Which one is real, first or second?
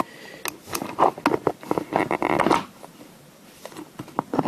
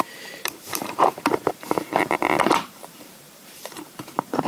first